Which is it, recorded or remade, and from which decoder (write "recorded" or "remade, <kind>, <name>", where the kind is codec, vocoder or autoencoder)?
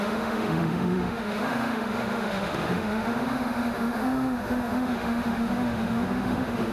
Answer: remade, autoencoder, DAC-VAE